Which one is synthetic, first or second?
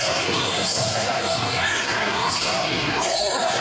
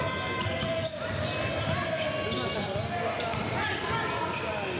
first